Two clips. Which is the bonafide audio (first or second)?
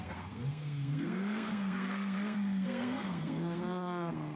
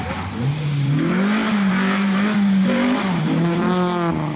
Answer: second